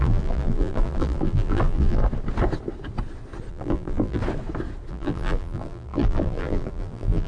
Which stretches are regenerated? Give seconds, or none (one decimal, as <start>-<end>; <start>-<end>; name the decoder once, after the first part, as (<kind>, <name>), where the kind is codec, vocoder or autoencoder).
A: 0.0-2.0 (vocoder, BigVGAN v2); 3.5-4.2; 4.9-7.3